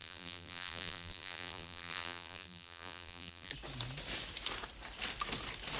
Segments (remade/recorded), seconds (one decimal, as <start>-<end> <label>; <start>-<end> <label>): 0.0-3.5 remade; 3.5-5.8 recorded